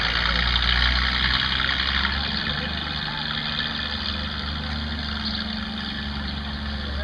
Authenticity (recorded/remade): recorded